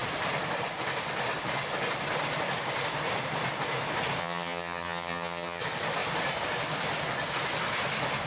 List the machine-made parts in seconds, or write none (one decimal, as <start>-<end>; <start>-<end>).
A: 4.2-5.6